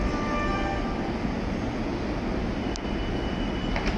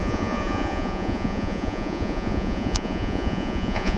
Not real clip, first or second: second